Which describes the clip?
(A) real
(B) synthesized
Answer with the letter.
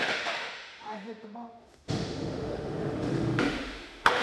B